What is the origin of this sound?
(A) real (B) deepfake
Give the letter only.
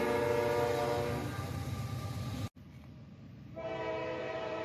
A